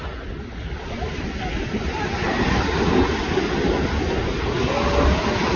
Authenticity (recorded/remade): recorded